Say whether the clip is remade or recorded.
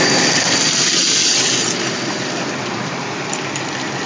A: recorded